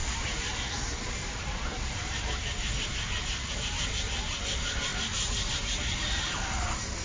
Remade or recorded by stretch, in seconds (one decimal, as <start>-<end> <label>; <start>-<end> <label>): 0.0-1.0 recorded; 1.0-7.0 remade